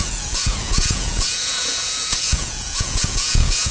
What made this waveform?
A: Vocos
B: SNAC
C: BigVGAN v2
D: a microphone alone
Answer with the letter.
A